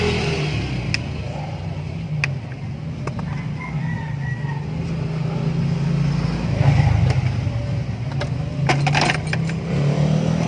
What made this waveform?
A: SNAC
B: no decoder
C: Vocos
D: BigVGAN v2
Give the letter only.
B